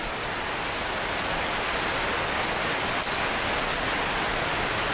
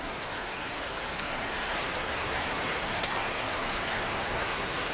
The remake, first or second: second